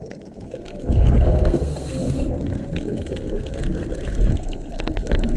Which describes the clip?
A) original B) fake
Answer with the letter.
B